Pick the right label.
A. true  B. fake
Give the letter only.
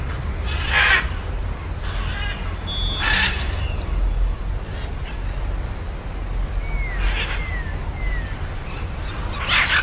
A